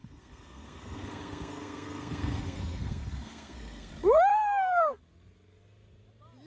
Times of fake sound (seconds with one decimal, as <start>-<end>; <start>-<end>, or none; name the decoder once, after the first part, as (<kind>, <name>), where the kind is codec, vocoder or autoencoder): 0.0-3.9 (codec, SNAC); 4.3-5.0